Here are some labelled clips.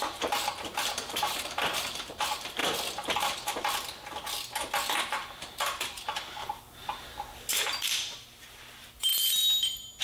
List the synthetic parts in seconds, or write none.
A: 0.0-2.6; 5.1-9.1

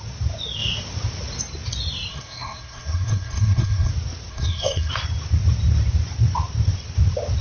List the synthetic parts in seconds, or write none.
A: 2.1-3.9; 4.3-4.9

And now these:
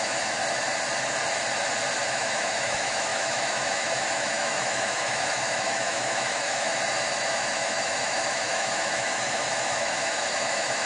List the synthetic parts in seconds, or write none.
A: 0.0-0.4; 2.1-6.7; 7.3-10.9